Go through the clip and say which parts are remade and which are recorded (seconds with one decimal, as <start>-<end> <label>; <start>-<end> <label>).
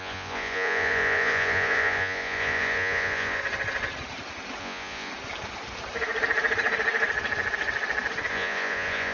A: 0.0-3.4 remade; 3.4-4.6 recorded; 4.6-5.1 remade; 5.1-8.3 recorded; 8.3-9.1 remade